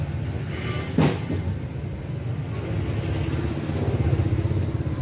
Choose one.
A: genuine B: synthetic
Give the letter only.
A